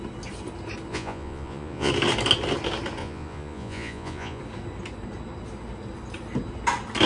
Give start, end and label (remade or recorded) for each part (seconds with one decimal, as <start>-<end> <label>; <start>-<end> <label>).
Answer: 0.0-0.9 recorded; 0.9-1.9 remade; 1.9-3.0 recorded; 3.0-4.4 remade; 4.4-7.1 recorded